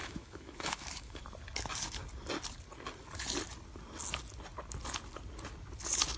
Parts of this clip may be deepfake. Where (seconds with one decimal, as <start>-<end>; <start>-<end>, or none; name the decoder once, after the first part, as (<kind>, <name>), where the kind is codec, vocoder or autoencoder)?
0.0-1.2 (autoencoder, DAC-VAE)